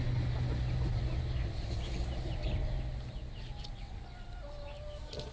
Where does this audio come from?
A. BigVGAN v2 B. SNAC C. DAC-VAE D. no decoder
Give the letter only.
D